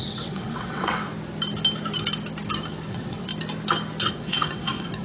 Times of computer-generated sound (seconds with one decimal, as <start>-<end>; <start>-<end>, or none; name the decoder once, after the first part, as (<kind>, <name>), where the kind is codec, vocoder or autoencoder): 0.0-1.1 (vocoder, WaveNeXt); 2.9-3.3; 4.1-5.0